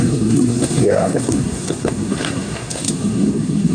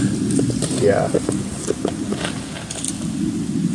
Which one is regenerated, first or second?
first